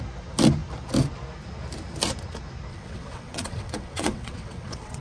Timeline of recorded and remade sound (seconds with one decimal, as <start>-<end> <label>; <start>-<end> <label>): 0.0-2.7 recorded; 2.7-5.0 remade